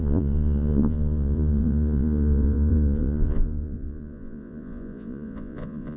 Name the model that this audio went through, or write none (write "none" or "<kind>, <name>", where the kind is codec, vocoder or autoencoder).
vocoder, Vocos